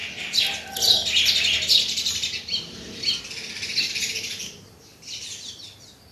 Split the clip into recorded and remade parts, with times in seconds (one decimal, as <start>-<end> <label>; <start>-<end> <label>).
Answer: 0.0-6.1 recorded